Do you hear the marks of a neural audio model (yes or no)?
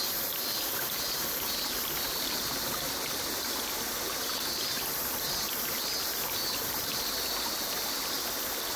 no